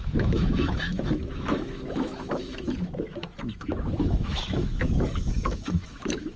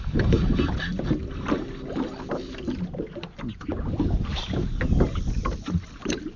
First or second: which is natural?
second